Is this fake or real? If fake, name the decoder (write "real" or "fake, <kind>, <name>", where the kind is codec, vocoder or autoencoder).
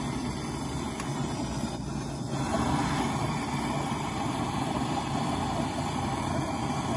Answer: real